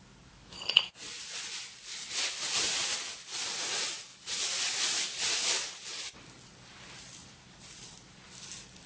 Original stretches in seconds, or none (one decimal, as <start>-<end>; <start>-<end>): 0.0-8.9